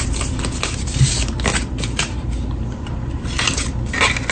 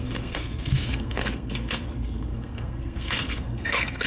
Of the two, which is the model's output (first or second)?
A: second